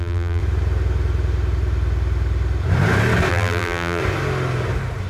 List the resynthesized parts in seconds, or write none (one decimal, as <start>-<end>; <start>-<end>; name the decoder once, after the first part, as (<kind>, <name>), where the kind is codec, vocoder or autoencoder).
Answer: 0.0-0.4 (vocoder, BigVGAN v2); 3.3-4.0